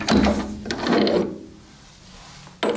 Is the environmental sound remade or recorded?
recorded